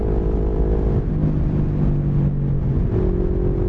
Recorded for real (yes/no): yes